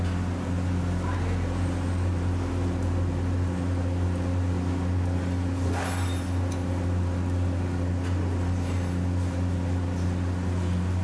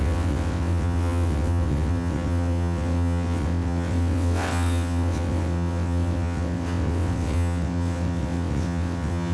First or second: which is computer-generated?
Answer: second